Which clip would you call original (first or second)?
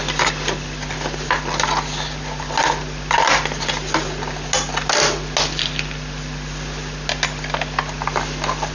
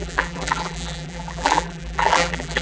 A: first